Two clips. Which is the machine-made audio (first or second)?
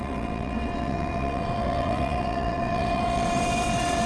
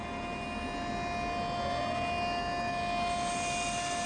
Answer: first